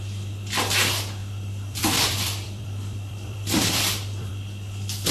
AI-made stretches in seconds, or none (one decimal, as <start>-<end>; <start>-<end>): 1.2-4.3

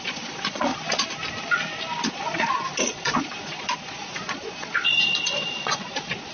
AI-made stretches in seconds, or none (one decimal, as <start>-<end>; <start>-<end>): 0.0-0.7; 2.1-6.3

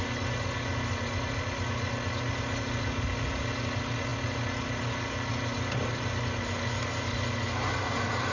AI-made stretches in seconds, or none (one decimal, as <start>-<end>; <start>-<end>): none

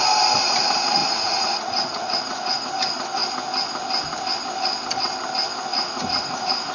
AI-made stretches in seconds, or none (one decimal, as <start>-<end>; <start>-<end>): 1.0-2.7; 5.7-6.7

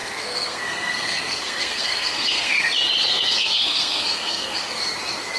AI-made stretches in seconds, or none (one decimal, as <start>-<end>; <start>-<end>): 0.0-2.7; 3.1-4.8

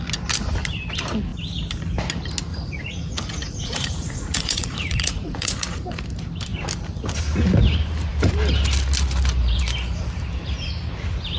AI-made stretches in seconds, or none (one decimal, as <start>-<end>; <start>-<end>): 2.5-5.9

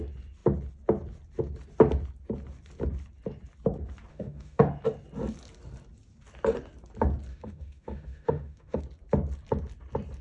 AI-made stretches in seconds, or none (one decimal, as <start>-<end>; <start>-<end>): 4.1-4.6; 7.3-8.8